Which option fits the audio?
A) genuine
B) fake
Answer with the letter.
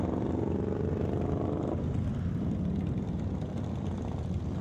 A